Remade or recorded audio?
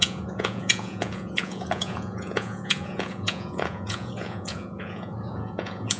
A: remade